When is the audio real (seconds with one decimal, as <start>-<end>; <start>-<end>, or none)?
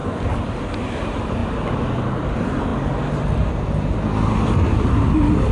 0.0-5.5